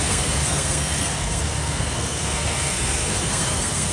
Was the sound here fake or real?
fake